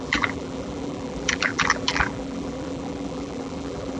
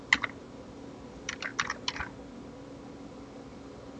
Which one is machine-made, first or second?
first